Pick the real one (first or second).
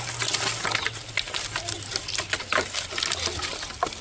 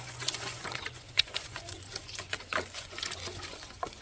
first